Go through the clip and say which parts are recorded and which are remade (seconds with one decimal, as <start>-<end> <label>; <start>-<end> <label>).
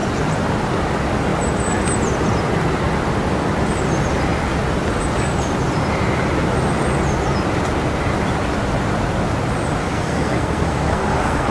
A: 0.0-9.8 recorded; 9.8-11.5 remade